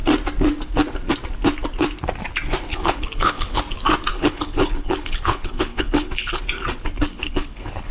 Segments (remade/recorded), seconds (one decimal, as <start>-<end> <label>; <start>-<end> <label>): 0.0-2.7 recorded; 2.7-3.6 remade; 3.6-4.1 recorded; 4.1-6.4 remade; 6.4-7.1 recorded; 7.1-7.9 remade